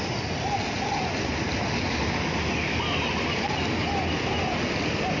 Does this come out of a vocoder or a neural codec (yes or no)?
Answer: no